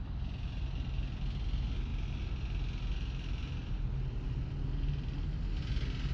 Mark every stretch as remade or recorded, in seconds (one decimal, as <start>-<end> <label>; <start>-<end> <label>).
0.0-6.1 recorded